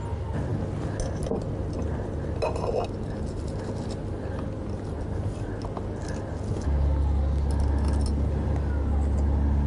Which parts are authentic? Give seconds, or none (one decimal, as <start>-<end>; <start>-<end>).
0.0-9.7